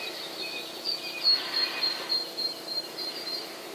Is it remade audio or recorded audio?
recorded